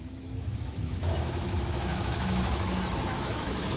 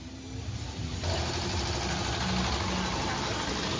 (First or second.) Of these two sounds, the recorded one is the second